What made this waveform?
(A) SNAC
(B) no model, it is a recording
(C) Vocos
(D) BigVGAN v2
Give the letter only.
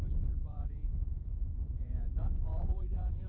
C